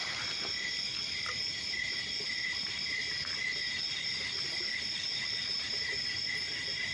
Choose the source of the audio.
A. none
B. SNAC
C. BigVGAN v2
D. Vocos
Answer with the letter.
A